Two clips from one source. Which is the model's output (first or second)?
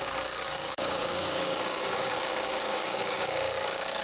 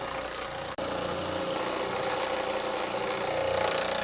first